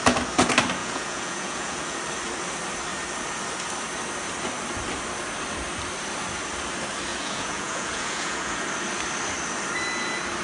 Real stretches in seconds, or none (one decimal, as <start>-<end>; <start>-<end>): 0.0-0.8; 2.0-7.1; 8.6-10.4